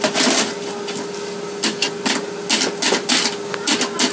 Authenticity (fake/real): real